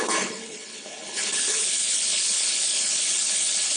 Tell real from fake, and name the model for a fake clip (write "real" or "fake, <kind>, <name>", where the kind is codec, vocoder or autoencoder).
fake, codec, HILCodec